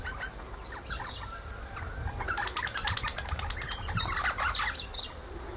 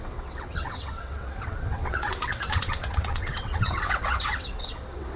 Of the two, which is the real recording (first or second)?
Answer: first